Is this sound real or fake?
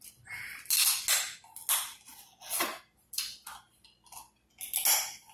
real